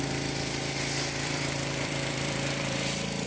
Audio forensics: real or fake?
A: fake